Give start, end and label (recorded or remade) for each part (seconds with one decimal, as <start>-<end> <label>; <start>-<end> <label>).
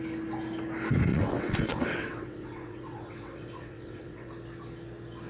0.0-1.1 recorded; 1.1-4.3 remade; 4.3-5.3 recorded